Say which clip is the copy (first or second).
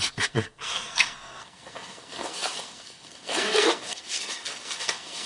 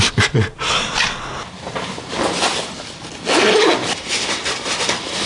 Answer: first